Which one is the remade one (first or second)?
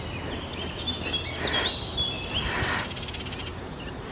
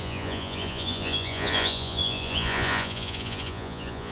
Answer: second